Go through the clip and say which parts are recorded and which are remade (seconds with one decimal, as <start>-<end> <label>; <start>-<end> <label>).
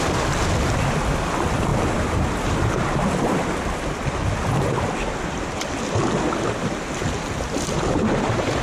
0.0-8.6 recorded